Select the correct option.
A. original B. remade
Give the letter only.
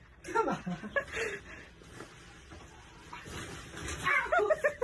A